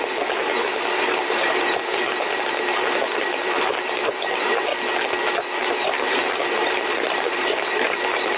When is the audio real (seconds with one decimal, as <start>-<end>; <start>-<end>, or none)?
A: 4.7-5.6